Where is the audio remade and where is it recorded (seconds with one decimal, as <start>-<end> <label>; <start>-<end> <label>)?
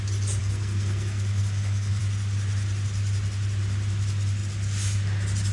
0.0-0.4 recorded; 0.4-2.0 remade; 2.0-5.5 recorded